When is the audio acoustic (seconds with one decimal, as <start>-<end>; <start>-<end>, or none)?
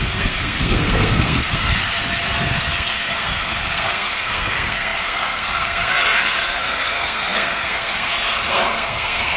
1.8-2.4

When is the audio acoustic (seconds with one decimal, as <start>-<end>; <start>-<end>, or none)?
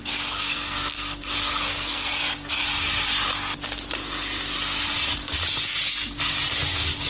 2.6-7.1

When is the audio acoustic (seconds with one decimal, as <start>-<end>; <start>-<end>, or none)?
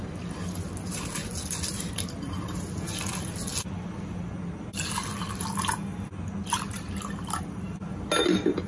0.0-8.7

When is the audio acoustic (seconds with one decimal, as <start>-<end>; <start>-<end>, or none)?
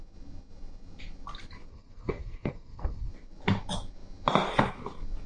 0.0-1.7; 3.1-5.3